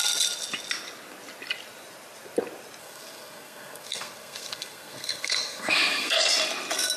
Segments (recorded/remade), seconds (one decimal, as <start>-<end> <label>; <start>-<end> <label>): 0.0-2.8 recorded; 2.8-6.2 remade; 6.2-7.0 recorded